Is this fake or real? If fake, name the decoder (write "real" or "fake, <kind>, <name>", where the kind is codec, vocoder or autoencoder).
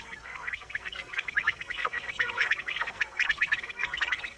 fake, codec, SNAC